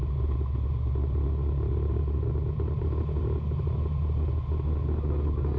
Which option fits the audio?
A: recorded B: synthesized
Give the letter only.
A